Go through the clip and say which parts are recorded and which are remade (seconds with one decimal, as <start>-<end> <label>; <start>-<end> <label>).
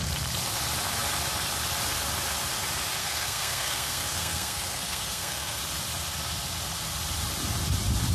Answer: 0.0-3.0 recorded; 3.0-5.6 remade; 5.6-8.1 recorded